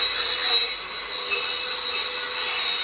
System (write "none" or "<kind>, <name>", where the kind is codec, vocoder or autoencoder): none